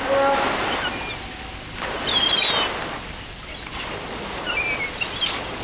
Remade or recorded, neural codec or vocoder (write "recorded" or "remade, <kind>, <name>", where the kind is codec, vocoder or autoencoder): recorded